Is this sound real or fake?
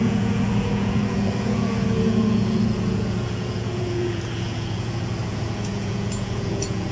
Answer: fake